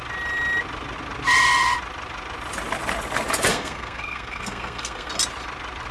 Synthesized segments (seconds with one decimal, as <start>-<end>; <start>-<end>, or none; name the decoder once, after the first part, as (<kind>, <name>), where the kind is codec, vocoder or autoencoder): 3.5-5.1 (codec, SNAC)